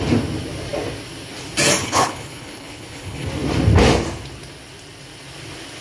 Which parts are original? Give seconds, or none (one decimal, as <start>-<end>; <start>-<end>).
0.0-1.8; 3.3-5.8